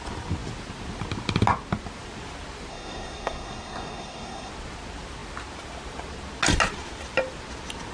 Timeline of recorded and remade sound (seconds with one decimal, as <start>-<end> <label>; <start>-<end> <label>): 0.0-2.7 recorded; 2.7-4.5 remade; 4.5-7.9 recorded